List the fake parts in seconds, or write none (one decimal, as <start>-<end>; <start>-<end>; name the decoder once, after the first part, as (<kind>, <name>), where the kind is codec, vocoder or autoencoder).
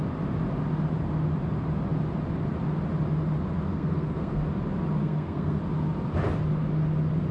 3.7-4.4 (codec, SNAC); 5.0-5.6